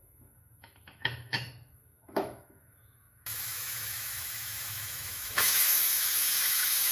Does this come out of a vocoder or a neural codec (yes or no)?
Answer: yes